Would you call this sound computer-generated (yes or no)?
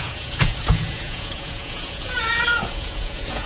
yes